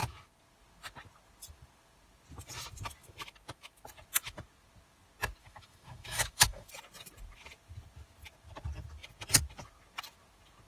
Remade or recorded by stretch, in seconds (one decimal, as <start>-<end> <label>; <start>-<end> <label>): 0.0-5.4 recorded; 5.4-6.7 remade; 6.7-10.7 recorded